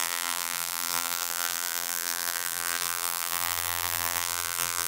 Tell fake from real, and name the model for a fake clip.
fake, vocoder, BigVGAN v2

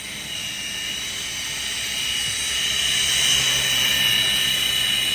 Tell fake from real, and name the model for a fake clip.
real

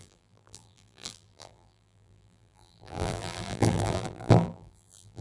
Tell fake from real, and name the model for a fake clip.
fake, vocoder, BigVGAN v2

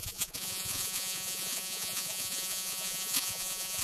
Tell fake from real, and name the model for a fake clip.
fake, vocoder, Vocos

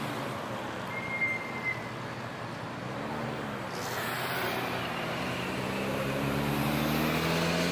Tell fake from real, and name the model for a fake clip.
real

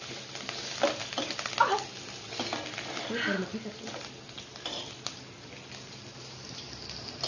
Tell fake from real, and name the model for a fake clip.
real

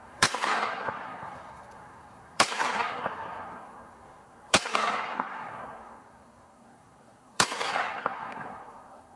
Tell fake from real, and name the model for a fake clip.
fake, codec, SNAC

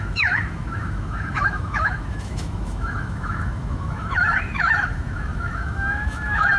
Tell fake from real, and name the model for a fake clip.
fake, autoencoder, DAC-VAE